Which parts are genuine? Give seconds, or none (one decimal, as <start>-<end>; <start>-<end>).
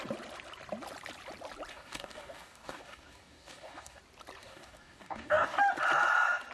0.0-1.7; 4.0-4.4; 5.6-6.5